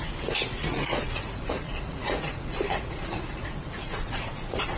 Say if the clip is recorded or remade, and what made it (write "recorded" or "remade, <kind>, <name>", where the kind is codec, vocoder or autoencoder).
remade, vocoder, Vocos